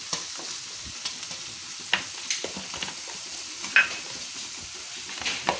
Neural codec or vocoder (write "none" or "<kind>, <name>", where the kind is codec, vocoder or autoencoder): none